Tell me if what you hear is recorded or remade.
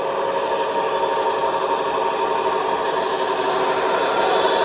recorded